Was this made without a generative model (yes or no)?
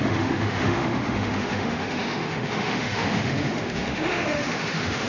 no